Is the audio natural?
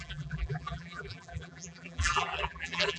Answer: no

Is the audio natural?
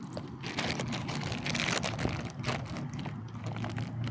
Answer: yes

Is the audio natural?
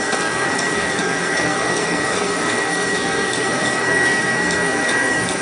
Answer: no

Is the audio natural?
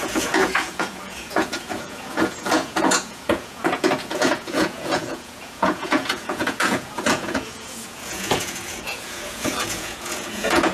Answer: no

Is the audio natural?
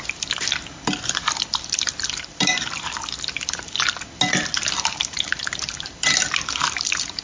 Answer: yes